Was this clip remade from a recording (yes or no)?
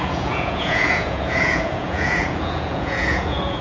yes